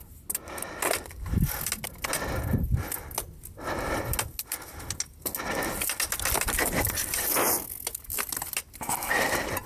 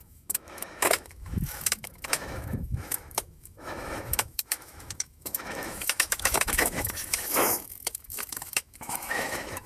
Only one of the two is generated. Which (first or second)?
second